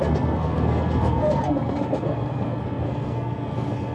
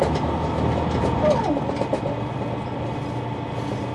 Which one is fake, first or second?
first